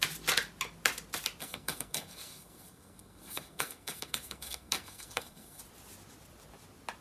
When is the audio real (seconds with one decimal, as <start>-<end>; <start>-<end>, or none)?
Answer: 0.0-1.4; 5.6-7.0